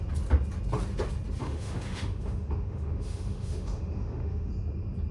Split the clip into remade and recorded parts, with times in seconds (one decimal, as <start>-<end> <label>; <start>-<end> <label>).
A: 0.0-1.4 recorded; 1.4-4.5 remade; 4.5-5.1 recorded